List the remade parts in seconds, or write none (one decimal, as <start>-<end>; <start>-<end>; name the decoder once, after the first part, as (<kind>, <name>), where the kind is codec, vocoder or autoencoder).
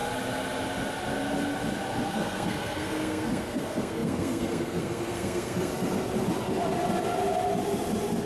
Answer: 2.1-5.7 (codec, SNAC)